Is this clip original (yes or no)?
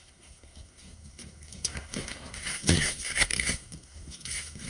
no